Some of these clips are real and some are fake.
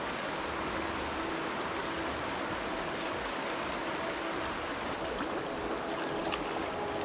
real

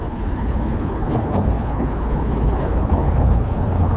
fake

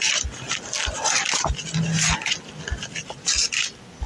real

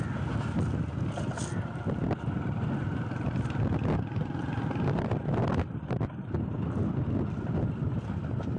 real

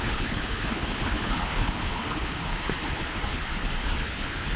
fake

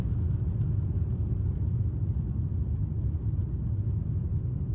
real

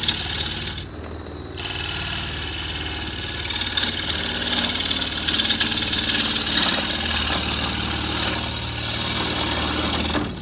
real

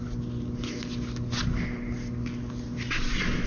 real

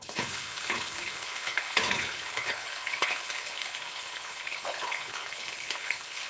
fake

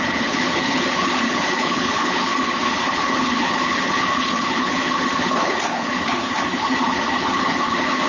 fake